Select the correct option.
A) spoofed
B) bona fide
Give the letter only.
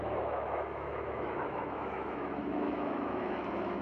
A